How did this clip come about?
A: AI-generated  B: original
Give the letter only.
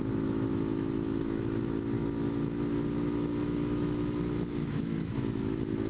A